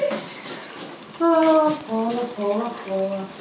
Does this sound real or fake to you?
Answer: real